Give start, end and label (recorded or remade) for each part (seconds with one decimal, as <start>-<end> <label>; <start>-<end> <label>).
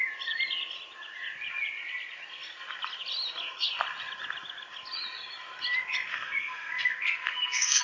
0.0-6.1 recorded; 6.1-7.8 remade